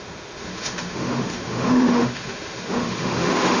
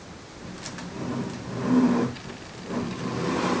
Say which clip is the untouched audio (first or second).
second